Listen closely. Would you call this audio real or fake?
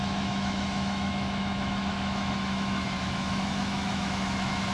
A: fake